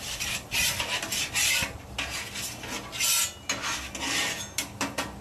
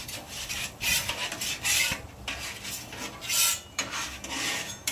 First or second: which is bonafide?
first